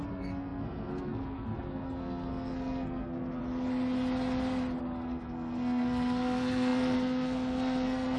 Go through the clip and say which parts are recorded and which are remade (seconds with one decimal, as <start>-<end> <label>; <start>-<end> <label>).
0.0-3.4 remade; 3.4-4.8 recorded; 4.8-8.2 remade